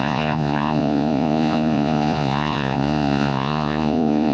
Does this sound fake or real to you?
fake